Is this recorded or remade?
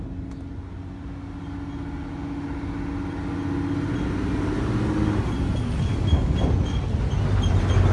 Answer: recorded